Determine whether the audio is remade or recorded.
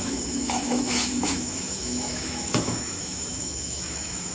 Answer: remade